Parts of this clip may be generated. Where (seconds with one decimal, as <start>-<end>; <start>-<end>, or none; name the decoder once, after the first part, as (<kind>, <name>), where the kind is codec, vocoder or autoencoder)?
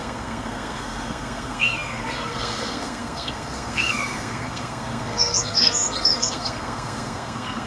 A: 0.0-7.7 (codec, SNAC)